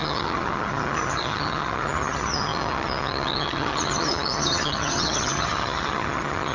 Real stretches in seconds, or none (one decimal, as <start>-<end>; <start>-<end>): none